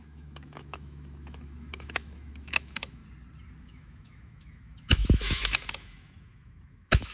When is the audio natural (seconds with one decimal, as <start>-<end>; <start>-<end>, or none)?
3.0-3.6